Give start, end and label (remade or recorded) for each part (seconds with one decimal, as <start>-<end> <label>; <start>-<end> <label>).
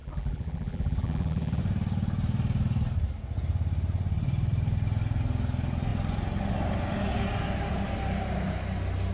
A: 0.0-1.6 remade; 1.6-9.1 recorded